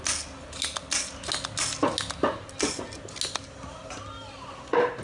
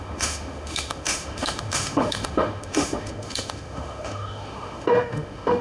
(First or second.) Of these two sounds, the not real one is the second